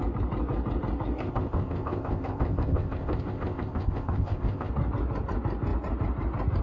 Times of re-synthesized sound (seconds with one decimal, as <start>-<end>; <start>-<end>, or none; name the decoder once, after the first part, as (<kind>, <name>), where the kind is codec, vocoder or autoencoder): 1.2-4.7 (codec, ZipCodec)